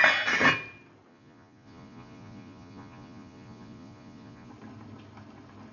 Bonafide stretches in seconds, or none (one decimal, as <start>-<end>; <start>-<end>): 0.0-1.1; 4.5-5.7